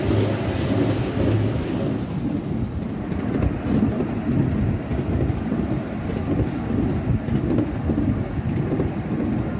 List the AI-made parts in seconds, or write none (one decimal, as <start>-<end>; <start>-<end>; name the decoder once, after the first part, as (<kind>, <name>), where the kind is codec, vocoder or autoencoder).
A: none